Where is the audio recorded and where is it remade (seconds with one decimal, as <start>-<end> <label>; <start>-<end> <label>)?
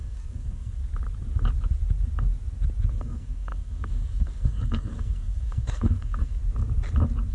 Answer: 0.0-0.8 remade; 0.8-2.9 recorded; 2.9-6.4 remade; 6.4-7.3 recorded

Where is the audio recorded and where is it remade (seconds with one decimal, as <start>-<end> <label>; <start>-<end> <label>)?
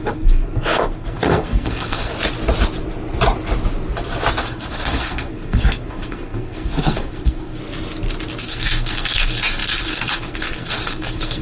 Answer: 0.0-2.1 remade; 2.1-4.4 recorded; 4.4-7.6 remade; 7.6-8.4 recorded; 8.4-11.4 remade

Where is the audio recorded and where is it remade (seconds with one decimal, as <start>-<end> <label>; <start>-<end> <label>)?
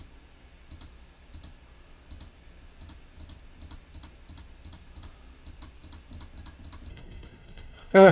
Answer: 0.0-6.9 recorded; 6.9-8.1 remade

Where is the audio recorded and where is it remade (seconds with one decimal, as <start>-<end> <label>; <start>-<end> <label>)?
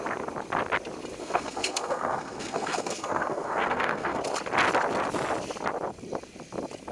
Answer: 0.0-1.2 recorded; 1.2-4.2 remade; 4.2-6.9 recorded